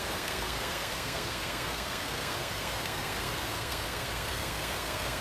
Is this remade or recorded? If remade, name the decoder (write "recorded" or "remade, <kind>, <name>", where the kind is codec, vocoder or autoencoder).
remade, codec, SNAC